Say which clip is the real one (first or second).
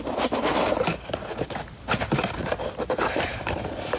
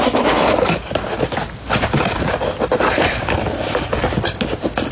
second